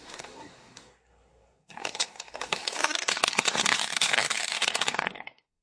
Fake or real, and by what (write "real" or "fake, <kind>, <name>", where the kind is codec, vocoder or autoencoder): fake, codec, SNAC